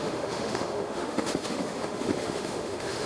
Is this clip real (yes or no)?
no